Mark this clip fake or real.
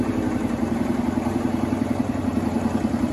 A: fake